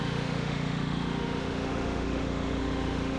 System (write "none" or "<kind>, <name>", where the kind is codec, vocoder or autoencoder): autoencoder, DAC-VAE